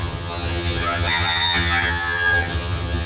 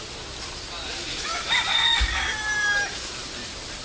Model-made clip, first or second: first